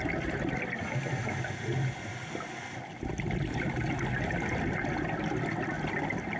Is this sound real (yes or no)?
yes